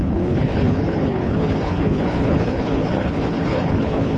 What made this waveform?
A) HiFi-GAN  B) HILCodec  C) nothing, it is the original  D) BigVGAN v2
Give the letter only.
B